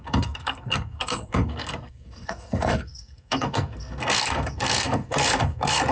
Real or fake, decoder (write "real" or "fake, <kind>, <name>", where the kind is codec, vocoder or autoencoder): fake, codec, SNAC